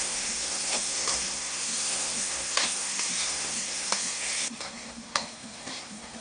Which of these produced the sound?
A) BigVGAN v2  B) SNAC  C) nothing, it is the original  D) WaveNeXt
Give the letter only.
B